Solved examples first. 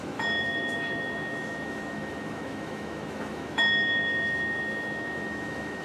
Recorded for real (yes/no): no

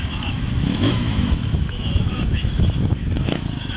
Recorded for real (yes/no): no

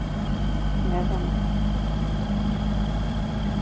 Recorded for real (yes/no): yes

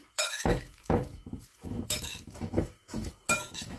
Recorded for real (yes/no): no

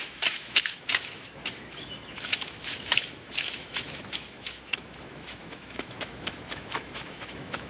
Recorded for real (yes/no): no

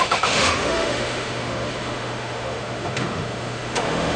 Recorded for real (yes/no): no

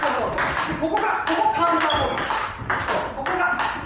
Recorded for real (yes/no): yes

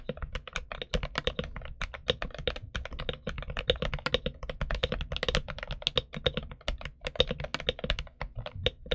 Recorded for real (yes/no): yes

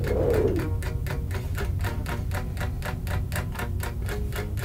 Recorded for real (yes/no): yes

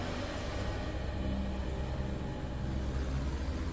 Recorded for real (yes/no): yes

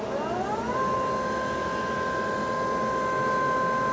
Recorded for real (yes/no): yes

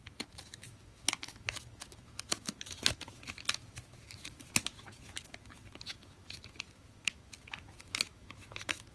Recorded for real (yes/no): no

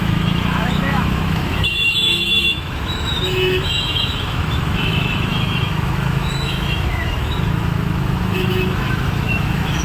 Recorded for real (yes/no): no